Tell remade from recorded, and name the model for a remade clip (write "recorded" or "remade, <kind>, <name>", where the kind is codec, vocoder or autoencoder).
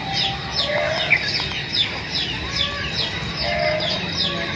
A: recorded